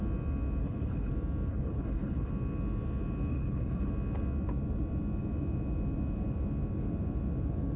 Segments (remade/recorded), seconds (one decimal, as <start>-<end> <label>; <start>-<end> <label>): 0.0-0.6 recorded; 0.6-1.1 remade; 1.1-1.5 recorded; 1.5-2.3 remade; 2.3-3.3 recorded; 3.3-3.9 remade; 3.9-7.8 recorded